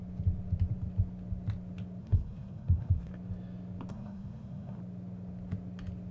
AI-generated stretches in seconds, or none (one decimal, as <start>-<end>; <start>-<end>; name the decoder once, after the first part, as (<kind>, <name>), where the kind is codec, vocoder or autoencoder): 2.0-3.1 (codec, SNAC); 3.9-4.8